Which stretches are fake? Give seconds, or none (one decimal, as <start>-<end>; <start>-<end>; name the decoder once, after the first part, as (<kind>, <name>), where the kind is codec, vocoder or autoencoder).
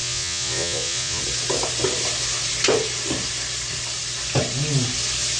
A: 0.0-1.2 (vocoder, Vocos)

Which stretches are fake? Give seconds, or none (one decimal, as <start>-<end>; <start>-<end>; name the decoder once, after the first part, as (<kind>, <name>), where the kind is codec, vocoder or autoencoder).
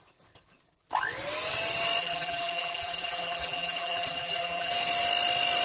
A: 2.0-4.7 (vocoder, BigVGAN v2)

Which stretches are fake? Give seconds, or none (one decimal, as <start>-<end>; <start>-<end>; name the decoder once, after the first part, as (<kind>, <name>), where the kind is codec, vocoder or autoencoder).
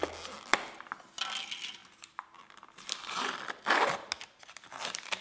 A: none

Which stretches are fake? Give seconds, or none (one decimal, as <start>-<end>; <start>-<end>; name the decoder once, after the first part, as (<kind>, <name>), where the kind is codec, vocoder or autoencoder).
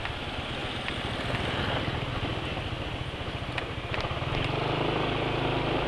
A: none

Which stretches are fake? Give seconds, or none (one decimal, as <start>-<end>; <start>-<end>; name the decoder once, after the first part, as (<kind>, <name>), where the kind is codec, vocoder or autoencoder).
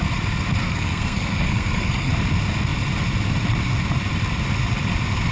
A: 0.6-2.1 (codec, SNAC)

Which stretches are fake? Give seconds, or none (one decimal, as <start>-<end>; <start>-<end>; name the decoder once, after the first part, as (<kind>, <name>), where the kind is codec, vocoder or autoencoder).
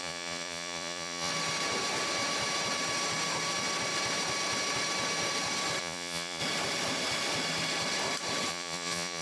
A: 0.0-1.3 (vocoder, Vocos); 5.8-6.4; 8.5-9.2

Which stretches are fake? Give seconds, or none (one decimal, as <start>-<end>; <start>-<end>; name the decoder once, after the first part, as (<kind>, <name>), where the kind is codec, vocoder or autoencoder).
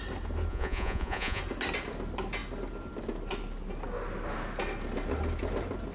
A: 0.5-1.4 (vocoder, Vocos)